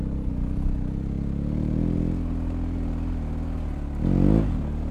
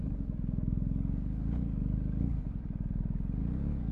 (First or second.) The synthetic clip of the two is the second